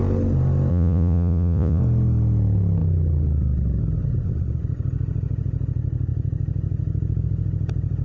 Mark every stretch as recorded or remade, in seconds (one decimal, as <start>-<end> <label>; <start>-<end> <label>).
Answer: 0.0-0.7 recorded; 0.7-1.8 remade; 1.8-8.0 recorded